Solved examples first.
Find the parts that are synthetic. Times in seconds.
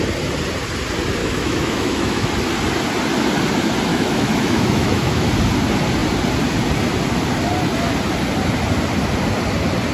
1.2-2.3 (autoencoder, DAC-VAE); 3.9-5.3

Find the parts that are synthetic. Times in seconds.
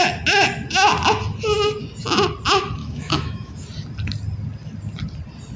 2.8-3.6 (autoencoder, DAC-VAE)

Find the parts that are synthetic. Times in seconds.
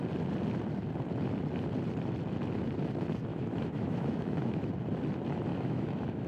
3.3-4.7 (autoencoder, DAC-VAE); 5.5-6.3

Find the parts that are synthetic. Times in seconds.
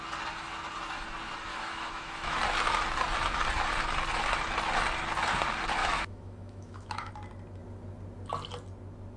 1.5-2.4 (autoencoder, DAC-VAE); 5.8-7.1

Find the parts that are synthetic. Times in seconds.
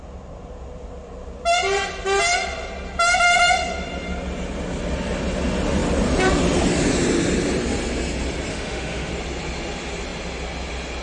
8.5-9.1 (autoencoder, DAC-VAE)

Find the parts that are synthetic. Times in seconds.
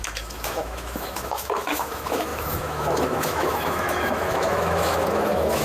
0.0-5.6 (autoencoder, DAC-VAE)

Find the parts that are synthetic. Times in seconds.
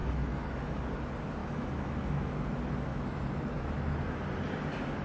0.0-0.8 (autoencoder, DAC-VAE); 1.4-2.3; 2.9-4.2